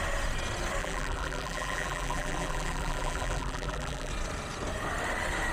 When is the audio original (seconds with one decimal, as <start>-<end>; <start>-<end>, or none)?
0.0-0.8; 4.1-5.5